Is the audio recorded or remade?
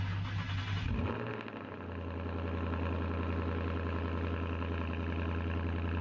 recorded